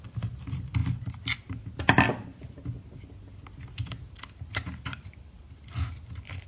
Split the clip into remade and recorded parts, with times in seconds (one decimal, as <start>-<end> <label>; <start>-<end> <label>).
0.0-6.5 recorded